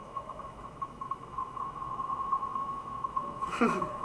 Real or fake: fake